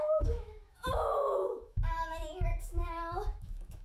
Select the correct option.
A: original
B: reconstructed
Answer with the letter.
B